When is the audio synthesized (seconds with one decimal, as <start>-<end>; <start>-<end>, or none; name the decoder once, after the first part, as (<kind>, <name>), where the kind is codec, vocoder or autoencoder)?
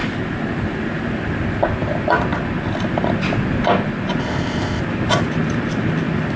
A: 4.2-4.8 (codec, ZipCodec)